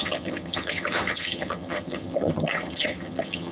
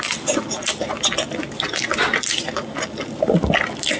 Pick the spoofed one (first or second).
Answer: first